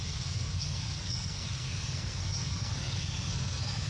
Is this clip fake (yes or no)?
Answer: yes